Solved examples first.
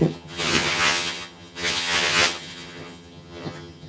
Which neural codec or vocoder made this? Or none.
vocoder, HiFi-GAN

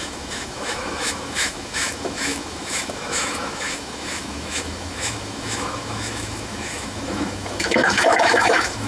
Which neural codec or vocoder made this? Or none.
autoencoder, DAC-VAE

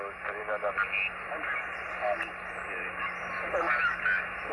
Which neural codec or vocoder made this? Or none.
none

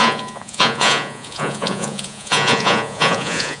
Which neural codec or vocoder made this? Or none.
vocoder, Vocos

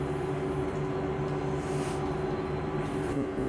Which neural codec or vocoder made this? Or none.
none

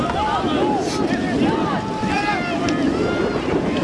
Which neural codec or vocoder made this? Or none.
none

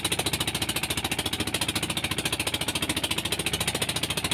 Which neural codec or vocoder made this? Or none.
none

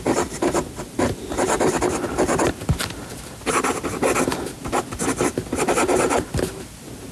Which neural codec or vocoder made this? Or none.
none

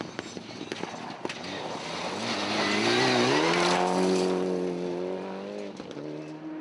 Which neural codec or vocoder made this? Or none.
none